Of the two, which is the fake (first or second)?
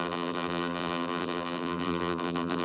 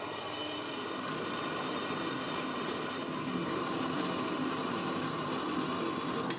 first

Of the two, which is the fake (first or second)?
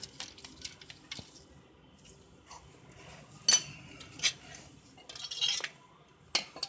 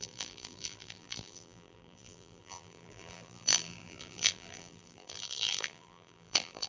second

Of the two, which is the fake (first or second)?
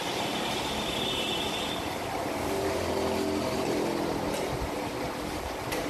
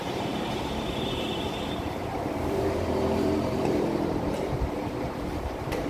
second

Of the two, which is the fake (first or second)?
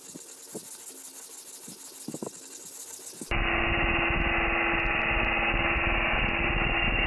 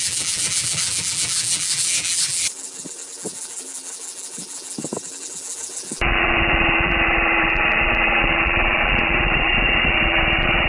second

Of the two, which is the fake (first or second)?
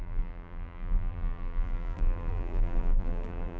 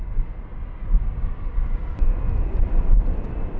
first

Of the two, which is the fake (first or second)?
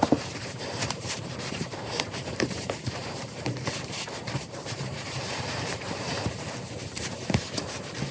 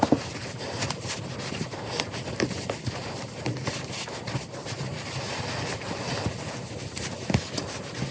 first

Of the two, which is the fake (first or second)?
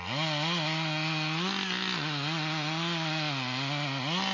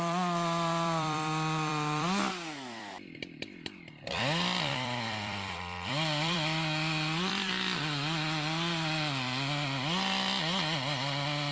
second